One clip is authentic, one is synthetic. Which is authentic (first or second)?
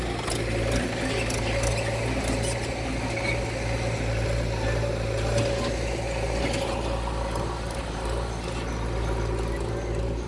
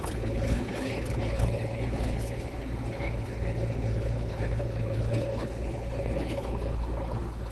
first